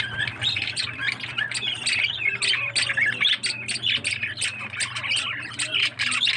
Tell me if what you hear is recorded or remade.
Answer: recorded